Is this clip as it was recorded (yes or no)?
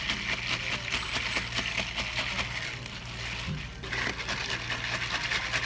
yes